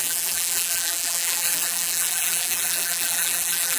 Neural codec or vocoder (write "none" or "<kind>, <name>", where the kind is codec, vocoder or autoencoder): vocoder, BigVGAN v2